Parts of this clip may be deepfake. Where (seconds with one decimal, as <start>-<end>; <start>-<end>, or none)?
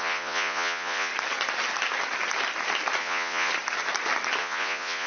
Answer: 0.0-1.1; 3.0-3.5; 4.4-5.1